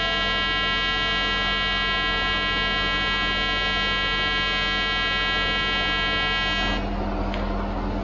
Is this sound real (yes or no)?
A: yes